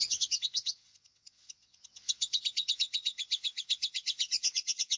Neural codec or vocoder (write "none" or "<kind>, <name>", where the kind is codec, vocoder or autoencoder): vocoder, WaveNeXt